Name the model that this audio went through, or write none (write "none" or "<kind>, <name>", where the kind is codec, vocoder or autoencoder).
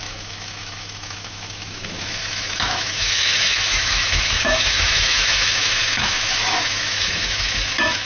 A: autoencoder, DAC-VAE